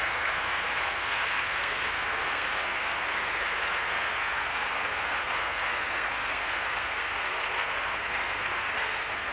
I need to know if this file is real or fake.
fake